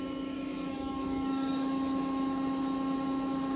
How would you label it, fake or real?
fake